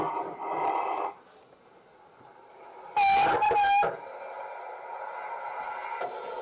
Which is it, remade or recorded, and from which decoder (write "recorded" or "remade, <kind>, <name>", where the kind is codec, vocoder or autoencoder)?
recorded